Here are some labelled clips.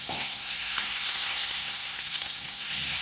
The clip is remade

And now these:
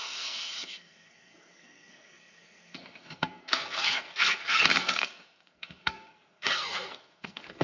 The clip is remade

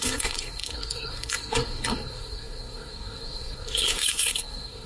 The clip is remade